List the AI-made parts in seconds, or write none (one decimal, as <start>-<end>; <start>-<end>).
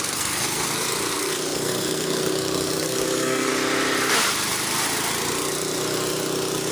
0.0-3.5